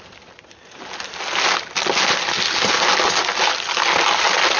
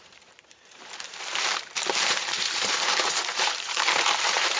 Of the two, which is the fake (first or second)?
second